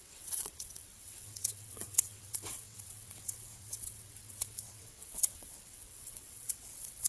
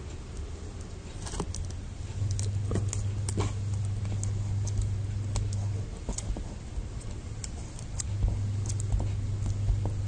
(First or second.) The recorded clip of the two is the second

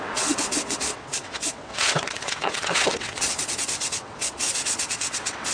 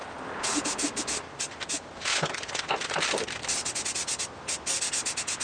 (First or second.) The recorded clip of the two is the second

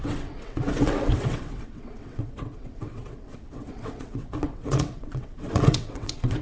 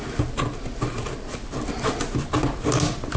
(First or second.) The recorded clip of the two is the second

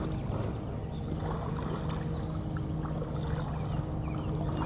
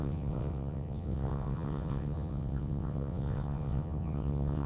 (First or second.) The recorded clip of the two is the first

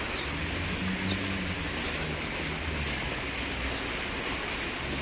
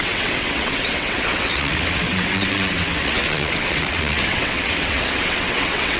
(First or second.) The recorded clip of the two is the first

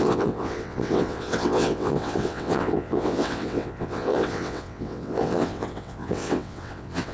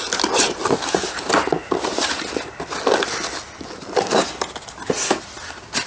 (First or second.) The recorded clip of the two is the second